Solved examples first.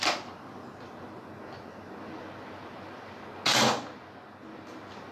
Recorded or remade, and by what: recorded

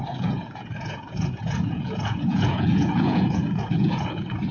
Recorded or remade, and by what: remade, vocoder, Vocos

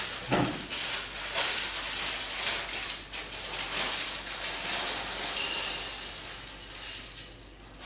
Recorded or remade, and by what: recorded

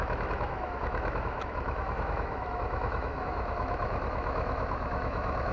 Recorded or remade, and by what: remade, autoencoder, DAC-VAE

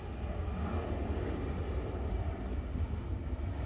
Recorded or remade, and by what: recorded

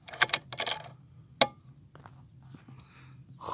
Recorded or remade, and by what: recorded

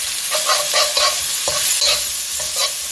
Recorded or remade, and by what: recorded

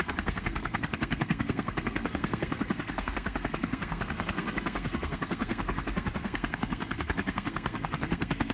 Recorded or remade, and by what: remade, codec, SNAC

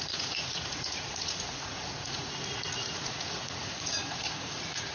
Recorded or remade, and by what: remade, vocoder, Vocos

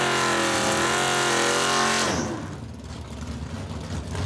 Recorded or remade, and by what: recorded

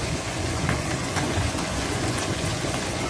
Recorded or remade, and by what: remade, vocoder, Vocos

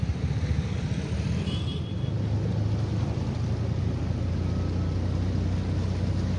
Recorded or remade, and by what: recorded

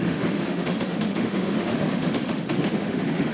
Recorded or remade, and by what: remade, autoencoder, DAC-VAE